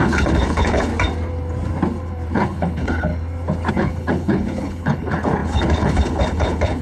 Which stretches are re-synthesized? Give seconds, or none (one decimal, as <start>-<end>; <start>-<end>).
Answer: 0.0-0.9; 2.3-3.1; 3.7-6.8